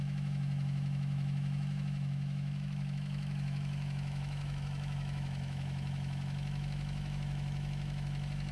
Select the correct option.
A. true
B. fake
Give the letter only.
B